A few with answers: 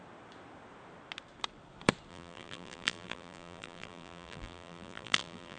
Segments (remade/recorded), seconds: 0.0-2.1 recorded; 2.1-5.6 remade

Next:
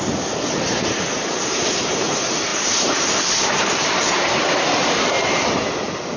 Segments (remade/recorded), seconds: 0.0-5.6 remade; 5.6-6.2 recorded

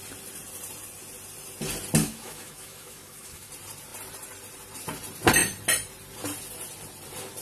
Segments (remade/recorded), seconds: 0.0-2.0 recorded; 2.0-3.5 remade; 3.5-7.4 recorded

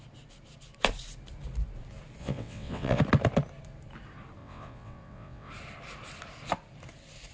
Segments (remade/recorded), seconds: 0.0-2.2 recorded; 2.2-3.0 remade; 3.0-4.4 recorded; 4.4-5.5 remade; 5.5-7.3 recorded

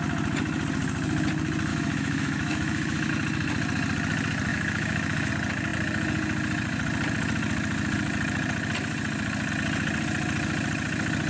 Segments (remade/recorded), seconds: 0.0-1.7 recorded; 1.7-3.1 remade; 3.1-4.5 recorded; 4.5-5.3 remade; 5.3-11.3 recorded

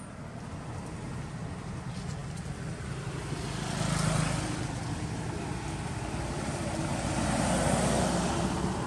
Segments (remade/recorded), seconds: 0.0-8.9 recorded

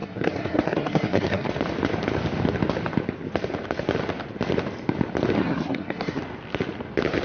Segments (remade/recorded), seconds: 0.0-1.5 remade; 1.5-5.4 recorded; 5.4-6.2 remade; 6.2-7.2 recorded